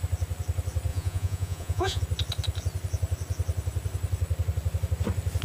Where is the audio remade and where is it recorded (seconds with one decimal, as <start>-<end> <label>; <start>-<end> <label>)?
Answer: 0.0-0.9 recorded; 0.9-2.0 remade; 2.0-5.4 recorded